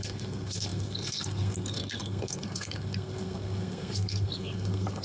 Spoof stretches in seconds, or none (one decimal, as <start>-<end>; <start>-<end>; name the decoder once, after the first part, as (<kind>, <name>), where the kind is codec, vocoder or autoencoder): 0.0-5.0 (codec, SNAC)